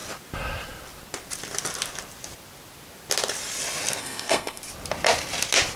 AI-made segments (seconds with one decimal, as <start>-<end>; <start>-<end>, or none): 4.0-4.6